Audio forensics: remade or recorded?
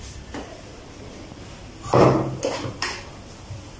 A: recorded